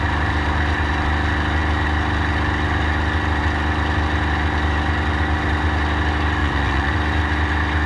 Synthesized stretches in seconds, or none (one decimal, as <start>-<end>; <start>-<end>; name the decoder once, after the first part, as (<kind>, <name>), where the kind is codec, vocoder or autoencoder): 6.4-6.9 (vocoder, Vocos)